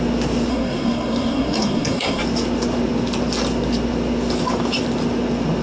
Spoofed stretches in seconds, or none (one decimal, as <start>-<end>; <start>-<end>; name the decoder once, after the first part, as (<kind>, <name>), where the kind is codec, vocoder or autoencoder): 0.5-2.2 (codec, SNAC)